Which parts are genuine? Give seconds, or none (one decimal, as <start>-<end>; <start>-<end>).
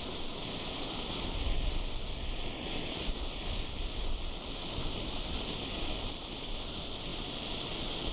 0.0-8.1